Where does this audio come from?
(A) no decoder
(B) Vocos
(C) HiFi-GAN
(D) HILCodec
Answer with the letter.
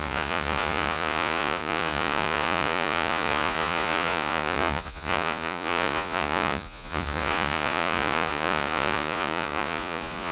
B